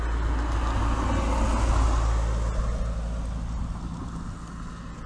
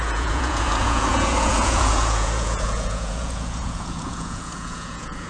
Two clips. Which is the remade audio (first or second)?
second